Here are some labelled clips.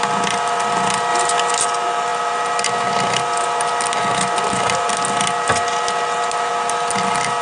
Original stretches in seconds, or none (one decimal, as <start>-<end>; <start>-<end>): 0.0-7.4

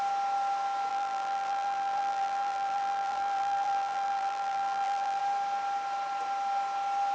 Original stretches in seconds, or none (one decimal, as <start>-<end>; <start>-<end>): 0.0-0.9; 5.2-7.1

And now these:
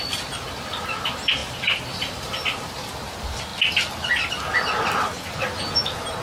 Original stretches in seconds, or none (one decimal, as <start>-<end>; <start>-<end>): 0.0-1.4; 2.6-6.2

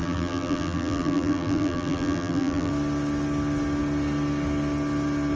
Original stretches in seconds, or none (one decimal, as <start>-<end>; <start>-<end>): 2.7-5.4